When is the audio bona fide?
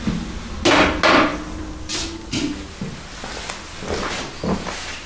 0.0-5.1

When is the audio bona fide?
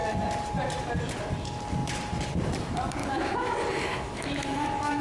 0.0-3.0; 3.5-3.9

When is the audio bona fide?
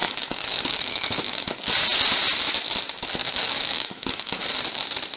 1.5-3.2; 4.3-5.2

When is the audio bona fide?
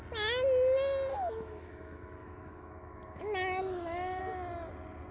0.0-1.1; 4.2-5.1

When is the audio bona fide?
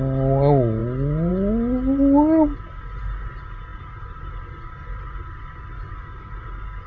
0.0-6.9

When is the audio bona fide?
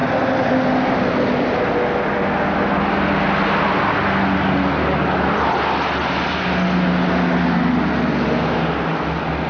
0.0-9.5